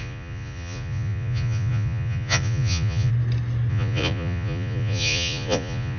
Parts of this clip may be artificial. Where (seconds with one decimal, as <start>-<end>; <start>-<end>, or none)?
0.0-3.1; 3.7-6.0